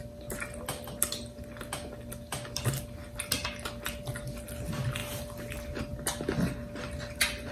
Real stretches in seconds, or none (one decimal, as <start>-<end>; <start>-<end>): 0.0-7.5